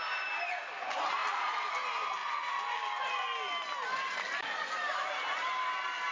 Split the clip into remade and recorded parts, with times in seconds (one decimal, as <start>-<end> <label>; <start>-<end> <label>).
0.0-6.1 recorded